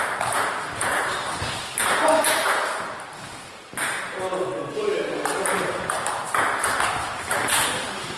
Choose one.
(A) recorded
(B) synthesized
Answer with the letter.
B